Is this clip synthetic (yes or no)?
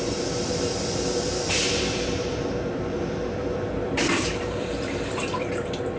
yes